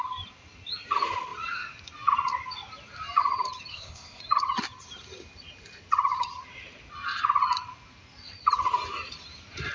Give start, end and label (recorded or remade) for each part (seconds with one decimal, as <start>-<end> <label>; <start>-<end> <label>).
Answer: 0.0-3.7 recorded; 3.7-4.2 remade; 4.2-9.7 recorded